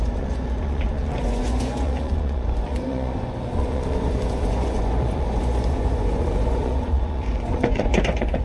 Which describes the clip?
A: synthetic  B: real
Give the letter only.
A